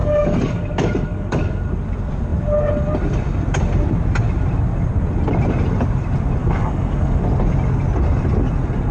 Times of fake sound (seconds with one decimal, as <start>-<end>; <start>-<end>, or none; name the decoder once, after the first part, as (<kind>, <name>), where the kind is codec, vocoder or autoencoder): 0.0-1.6 (codec, DAC); 6.4-7.2